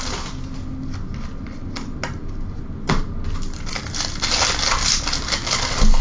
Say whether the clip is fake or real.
real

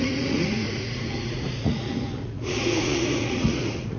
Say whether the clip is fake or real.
fake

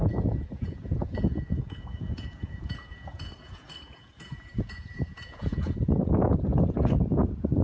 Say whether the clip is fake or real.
fake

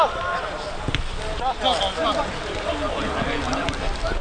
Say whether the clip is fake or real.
real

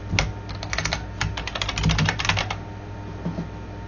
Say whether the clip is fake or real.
real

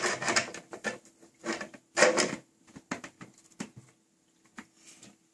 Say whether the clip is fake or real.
real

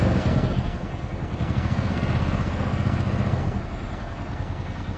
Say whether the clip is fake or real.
fake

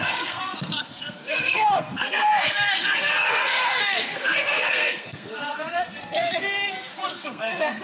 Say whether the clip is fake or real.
fake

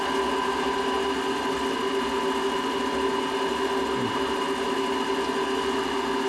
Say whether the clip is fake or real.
real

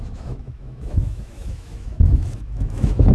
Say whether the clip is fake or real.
fake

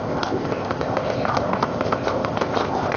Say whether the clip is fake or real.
fake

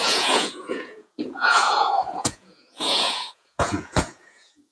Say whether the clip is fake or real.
fake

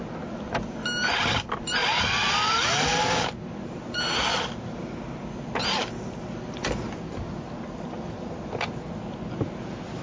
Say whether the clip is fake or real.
real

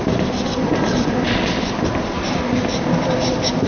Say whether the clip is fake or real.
fake